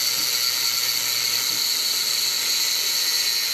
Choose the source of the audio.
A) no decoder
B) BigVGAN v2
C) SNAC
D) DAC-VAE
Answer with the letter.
A